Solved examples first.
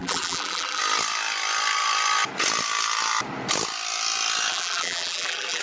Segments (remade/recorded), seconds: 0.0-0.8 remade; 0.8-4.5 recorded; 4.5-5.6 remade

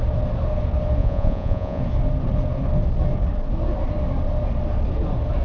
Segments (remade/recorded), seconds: 0.0-1.0 recorded; 1.0-1.8 remade; 1.8-5.4 recorded

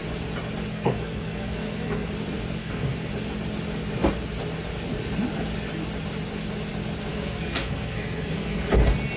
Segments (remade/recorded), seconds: 0.0-0.7 recorded; 0.7-2.1 remade; 2.1-2.6 recorded; 2.6-3.1 remade; 3.1-7.1 recorded; 7.1-8.7 remade; 8.7-9.2 recorded